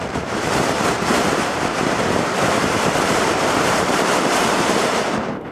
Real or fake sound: fake